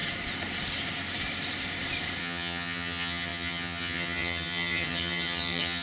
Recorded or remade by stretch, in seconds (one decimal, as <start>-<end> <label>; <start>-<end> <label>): 0.0-2.2 recorded; 2.2-5.8 remade